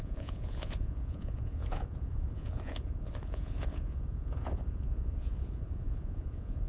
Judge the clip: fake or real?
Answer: fake